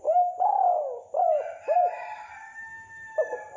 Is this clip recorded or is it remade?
recorded